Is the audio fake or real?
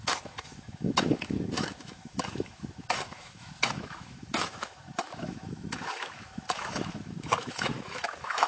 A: fake